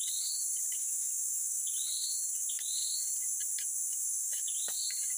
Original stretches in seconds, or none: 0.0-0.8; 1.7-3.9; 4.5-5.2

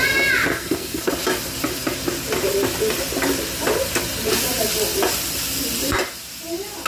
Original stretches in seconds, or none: 0.0-0.5; 1.1-6.9

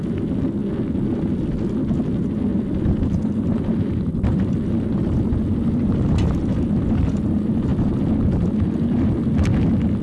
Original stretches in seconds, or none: 0.0-2.5; 5.9-10.0